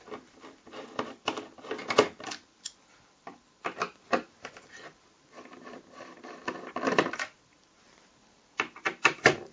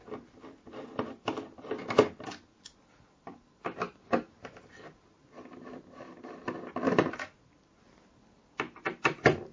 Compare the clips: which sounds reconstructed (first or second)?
first